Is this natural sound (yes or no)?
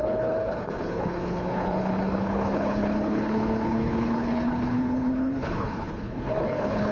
no